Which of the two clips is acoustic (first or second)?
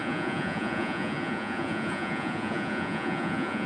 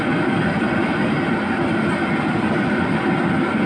second